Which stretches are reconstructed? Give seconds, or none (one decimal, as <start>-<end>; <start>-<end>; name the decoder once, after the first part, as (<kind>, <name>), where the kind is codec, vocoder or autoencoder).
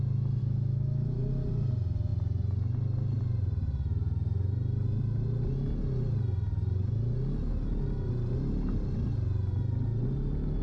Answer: 0.4-1.2 (autoencoder, DAC-VAE)